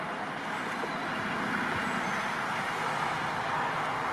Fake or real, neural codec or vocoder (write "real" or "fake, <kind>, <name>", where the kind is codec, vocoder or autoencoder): real